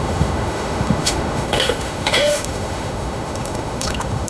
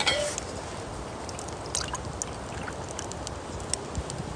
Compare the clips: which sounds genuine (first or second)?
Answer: second